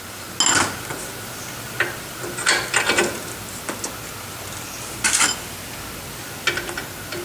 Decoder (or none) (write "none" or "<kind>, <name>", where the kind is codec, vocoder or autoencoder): none